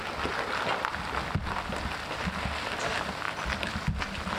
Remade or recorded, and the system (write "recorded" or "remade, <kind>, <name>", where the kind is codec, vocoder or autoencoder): recorded